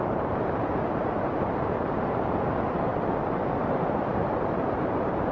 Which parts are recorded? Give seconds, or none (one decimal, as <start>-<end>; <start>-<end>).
2.9-3.6